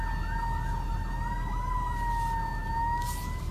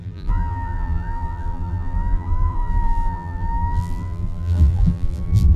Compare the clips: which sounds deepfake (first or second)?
second